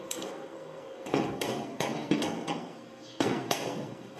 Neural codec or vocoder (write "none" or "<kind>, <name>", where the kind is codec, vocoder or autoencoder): codec, SNAC